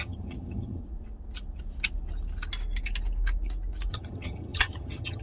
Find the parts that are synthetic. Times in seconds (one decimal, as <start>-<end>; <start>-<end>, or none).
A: 0.0-0.8; 3.9-5.2